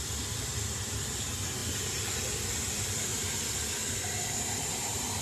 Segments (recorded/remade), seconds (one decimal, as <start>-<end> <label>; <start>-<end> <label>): 0.0-1.6 remade; 1.6-2.6 recorded; 2.6-3.1 remade; 3.1-4.4 recorded; 4.4-5.2 remade